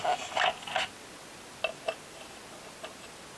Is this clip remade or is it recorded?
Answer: recorded